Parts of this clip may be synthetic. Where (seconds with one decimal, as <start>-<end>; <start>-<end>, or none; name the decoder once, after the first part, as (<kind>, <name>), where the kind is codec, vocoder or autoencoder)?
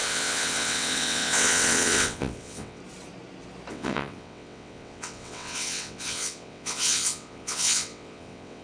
0.0-2.8 (vocoder, WaveNeXt); 3.7-8.6